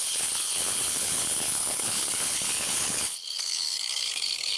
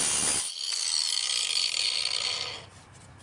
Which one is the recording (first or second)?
second